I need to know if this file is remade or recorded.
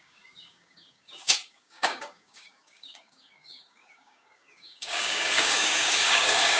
remade